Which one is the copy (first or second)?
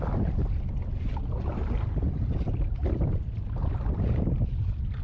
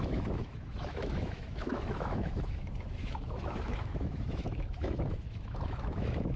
second